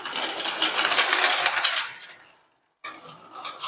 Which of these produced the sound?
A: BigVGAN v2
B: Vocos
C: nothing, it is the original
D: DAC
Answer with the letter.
C